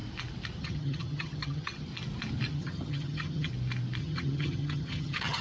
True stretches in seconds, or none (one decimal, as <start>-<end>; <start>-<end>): 0.0-0.6; 1.9-2.5; 3.5-4.0

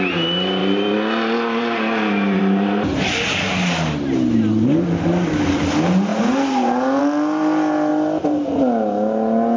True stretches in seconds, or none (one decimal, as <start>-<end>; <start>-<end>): 0.0-9.6

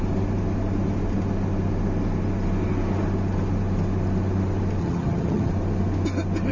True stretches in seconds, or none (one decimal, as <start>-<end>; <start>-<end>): 0.0-4.8; 5.5-6.5

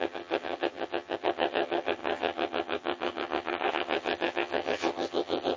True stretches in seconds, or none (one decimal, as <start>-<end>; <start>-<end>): none

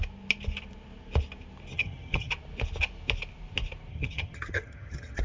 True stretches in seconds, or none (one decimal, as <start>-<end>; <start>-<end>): 0.0-1.7; 2.3-3.9